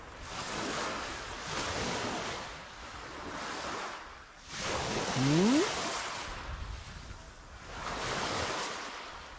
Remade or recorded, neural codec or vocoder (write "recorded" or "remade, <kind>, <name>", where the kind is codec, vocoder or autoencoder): recorded